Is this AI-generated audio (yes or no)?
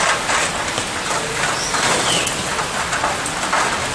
no